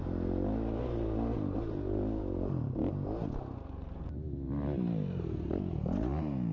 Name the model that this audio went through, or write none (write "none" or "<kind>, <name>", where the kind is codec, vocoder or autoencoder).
none